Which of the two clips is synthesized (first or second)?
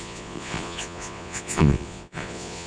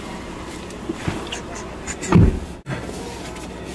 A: first